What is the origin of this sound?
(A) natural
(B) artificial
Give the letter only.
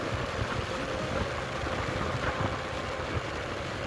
A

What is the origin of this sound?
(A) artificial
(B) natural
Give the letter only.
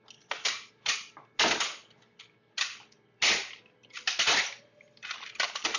B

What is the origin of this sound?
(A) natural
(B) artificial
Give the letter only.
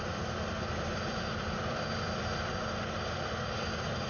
B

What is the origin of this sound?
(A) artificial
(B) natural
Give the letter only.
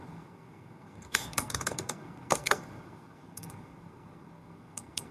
A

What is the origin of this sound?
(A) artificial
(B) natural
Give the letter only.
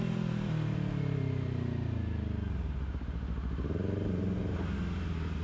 B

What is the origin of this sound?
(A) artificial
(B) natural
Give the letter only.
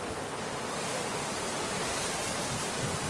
B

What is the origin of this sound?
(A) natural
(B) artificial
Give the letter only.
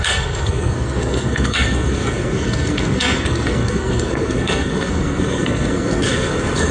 B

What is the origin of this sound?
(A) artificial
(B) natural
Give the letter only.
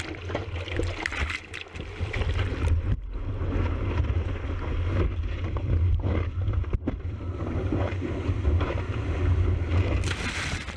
B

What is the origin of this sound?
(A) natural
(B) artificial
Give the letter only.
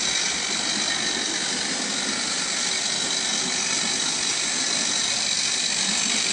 A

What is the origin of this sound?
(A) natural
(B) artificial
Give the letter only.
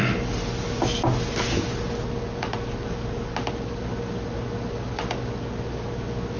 A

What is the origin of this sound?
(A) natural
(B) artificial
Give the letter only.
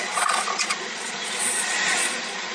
B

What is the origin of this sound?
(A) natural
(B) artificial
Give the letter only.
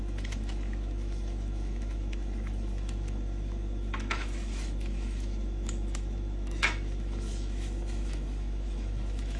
B